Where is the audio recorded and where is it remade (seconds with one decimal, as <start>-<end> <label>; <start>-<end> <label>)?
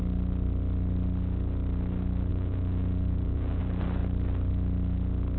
0.0-2.3 recorded; 2.3-3.6 remade; 3.6-5.4 recorded